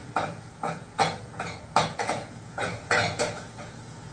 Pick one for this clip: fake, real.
fake